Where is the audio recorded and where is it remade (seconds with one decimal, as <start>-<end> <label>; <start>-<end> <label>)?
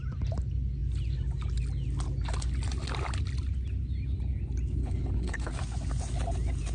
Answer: 0.0-4.8 recorded; 4.8-5.5 remade; 5.5-6.7 recorded